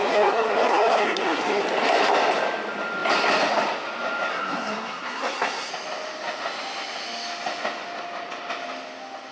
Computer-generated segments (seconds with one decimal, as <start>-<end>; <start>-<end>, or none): 0.0-1.6; 4.3-5.7